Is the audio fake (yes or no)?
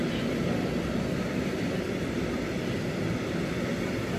no